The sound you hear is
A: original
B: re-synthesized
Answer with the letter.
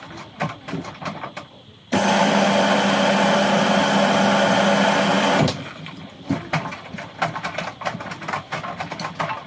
A